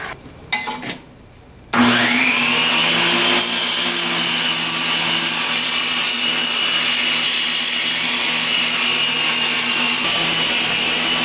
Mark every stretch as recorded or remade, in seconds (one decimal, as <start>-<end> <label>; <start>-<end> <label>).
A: 0.0-2.0 recorded; 2.0-2.5 remade; 2.5-11.2 recorded

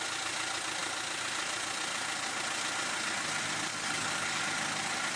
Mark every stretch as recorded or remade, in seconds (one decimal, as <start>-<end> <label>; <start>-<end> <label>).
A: 0.0-3.7 recorded; 3.7-4.4 remade; 4.4-5.2 recorded

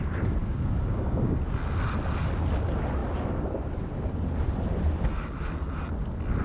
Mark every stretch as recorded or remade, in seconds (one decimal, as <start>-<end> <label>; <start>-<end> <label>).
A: 0.0-0.4 recorded; 0.4-1.4 remade; 1.4-6.4 recorded

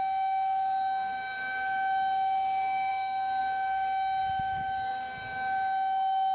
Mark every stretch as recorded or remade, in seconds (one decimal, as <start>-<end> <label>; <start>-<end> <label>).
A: 0.0-6.3 remade

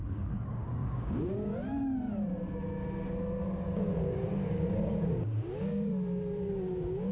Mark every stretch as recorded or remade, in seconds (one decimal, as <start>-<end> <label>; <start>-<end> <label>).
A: 0.0-1.5 remade; 1.5-3.5 recorded; 3.5-5.9 remade; 5.9-6.5 recorded; 6.5-7.1 remade